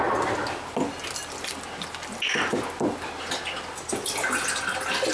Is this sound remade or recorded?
recorded